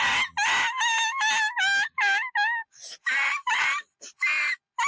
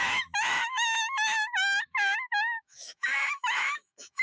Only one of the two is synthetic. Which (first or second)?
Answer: second